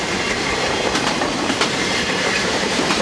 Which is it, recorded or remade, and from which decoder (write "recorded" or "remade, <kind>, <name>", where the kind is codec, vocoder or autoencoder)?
remade, vocoder, BigVGAN v2